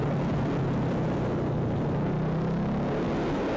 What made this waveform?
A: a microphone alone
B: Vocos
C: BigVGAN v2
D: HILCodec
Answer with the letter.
A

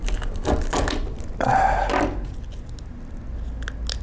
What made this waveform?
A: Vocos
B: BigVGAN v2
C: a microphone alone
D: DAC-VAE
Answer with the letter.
C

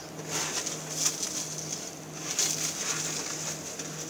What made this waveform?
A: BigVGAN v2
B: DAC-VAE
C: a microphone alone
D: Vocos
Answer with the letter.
C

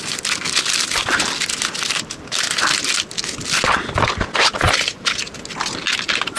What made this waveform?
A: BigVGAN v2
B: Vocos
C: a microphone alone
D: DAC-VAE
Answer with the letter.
C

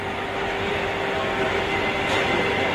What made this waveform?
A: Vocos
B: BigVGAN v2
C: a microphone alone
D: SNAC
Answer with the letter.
C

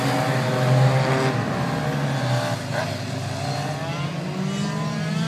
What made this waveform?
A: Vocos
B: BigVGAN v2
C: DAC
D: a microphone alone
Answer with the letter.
D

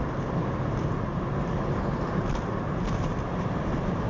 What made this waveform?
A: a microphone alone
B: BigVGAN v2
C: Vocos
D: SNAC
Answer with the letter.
B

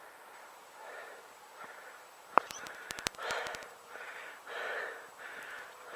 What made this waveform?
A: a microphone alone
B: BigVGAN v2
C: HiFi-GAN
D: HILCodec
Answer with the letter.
B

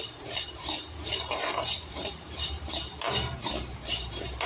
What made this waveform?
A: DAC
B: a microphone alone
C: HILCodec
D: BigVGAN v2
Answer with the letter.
D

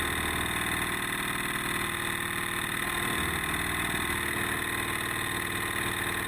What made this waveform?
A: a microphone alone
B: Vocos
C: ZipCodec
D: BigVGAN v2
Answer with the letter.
A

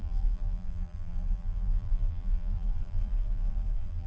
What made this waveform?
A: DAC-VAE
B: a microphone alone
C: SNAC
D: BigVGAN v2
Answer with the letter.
D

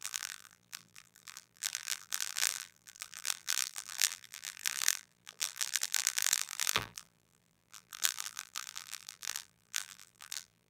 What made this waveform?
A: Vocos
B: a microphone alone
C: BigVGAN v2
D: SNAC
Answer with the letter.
C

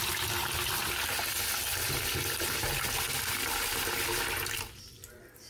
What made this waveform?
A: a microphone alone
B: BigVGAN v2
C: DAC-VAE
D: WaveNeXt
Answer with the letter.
A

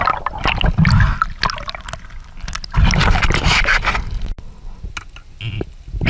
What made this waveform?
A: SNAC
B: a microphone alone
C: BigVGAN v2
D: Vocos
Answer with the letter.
B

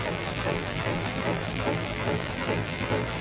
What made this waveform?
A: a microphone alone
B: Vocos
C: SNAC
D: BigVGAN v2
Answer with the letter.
D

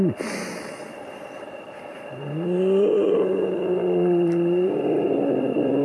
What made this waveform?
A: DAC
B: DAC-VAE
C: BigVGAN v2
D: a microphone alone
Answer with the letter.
C